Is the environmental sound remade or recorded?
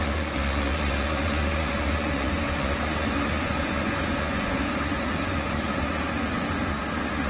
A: remade